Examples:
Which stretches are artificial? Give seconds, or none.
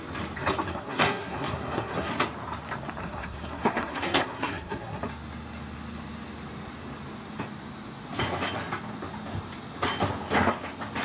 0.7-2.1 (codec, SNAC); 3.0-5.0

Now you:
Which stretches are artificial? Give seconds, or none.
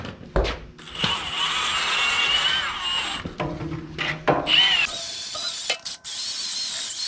none